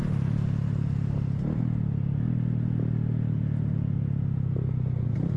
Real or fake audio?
real